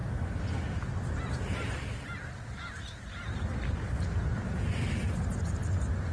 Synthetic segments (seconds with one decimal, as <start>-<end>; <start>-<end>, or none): none